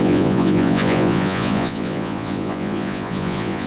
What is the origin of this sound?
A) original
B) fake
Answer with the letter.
B